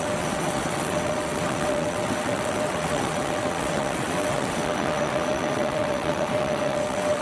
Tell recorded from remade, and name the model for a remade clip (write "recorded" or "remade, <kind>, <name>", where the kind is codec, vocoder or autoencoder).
remade, vocoder, WaveNeXt